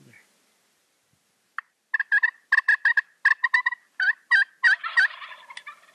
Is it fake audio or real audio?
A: real